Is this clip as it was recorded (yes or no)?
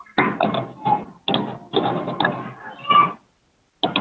yes